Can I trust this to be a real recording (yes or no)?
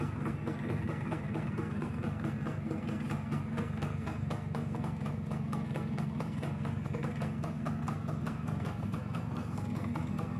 no